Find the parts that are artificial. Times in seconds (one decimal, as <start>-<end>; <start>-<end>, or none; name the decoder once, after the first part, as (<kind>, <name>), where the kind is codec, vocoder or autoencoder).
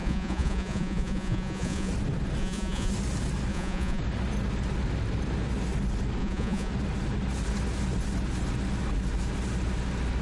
0.0-1.9 (vocoder, Vocos); 2.4-2.9; 3.5-4.0; 6.2-6.7